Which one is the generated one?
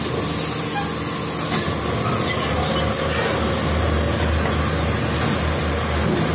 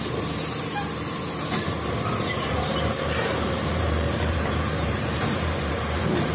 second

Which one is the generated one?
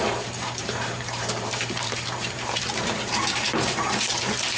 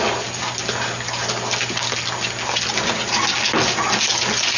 first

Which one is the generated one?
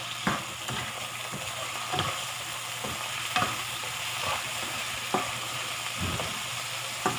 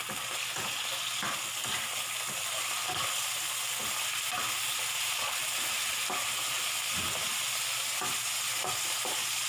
first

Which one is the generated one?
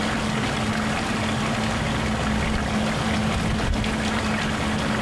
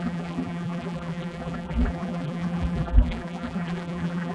second